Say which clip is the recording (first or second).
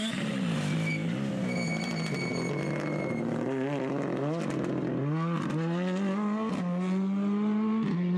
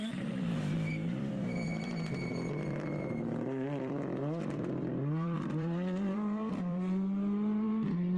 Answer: first